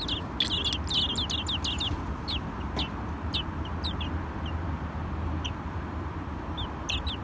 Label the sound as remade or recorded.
recorded